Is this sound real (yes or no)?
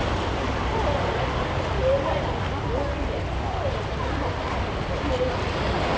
yes